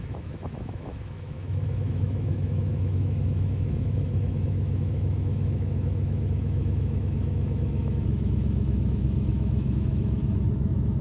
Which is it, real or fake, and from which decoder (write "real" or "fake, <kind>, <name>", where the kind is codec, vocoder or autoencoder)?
fake, autoencoder, DAC-VAE